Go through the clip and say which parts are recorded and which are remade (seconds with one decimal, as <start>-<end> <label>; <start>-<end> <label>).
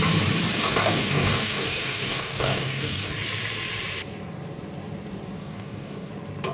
0.0-0.5 recorded; 0.5-3.1 remade; 3.1-5.4 recorded; 5.4-6.1 remade; 6.1-6.5 recorded